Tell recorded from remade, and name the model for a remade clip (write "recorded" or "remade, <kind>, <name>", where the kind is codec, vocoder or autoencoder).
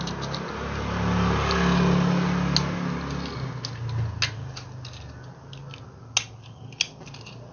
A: recorded